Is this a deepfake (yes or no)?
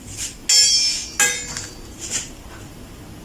no